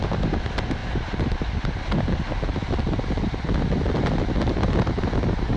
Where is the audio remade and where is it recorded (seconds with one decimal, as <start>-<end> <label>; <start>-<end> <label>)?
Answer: 0.0-5.6 recorded